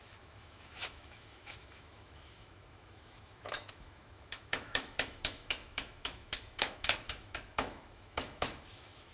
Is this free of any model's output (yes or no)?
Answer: no